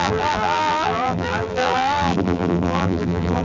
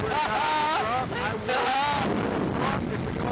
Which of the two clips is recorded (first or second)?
second